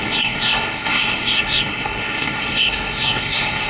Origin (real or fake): fake